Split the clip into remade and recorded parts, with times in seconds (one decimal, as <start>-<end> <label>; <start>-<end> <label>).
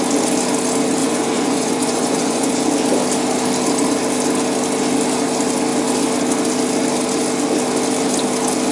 0.0-1.0 recorded; 1.0-2.5 remade; 2.5-8.7 recorded